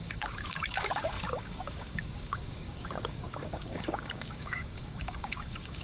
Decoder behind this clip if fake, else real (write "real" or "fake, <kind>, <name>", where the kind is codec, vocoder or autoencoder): fake, codec, DAC